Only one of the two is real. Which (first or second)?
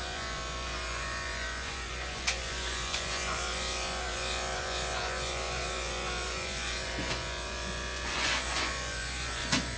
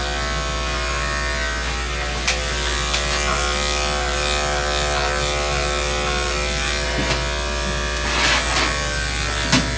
second